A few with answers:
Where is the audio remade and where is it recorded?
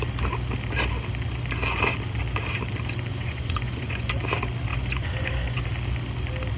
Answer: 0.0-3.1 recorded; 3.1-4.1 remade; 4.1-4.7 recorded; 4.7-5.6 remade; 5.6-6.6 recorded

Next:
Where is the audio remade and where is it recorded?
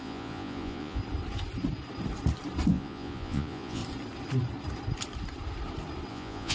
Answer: 0.0-1.0 remade; 1.0-2.7 recorded; 2.7-3.8 remade; 3.8-6.1 recorded; 6.1-6.5 remade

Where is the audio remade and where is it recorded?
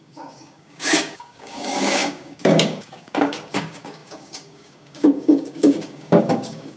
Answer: 0.0-6.8 remade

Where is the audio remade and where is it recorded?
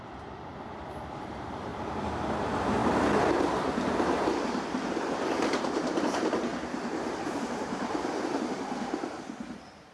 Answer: 0.0-0.5 remade; 0.5-1.0 recorded; 1.0-2.8 remade; 2.8-4.1 recorded; 4.1-6.5 remade; 6.5-7.3 recorded; 7.3-9.9 remade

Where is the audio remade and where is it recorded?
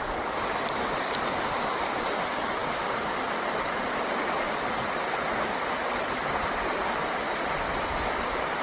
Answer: 0.0-8.6 recorded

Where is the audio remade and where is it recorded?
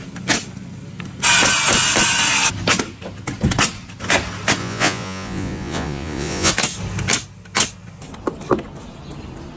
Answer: 0.0-4.6 recorded; 4.6-6.5 remade; 6.5-9.6 recorded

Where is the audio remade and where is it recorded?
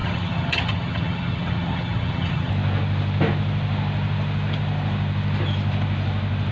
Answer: 0.0-2.5 remade; 2.5-6.5 recorded